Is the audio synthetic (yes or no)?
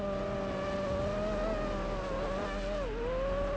no